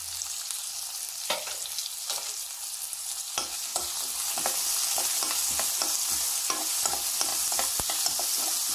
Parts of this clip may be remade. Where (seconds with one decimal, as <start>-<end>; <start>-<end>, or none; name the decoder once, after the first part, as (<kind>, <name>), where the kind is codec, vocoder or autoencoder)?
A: none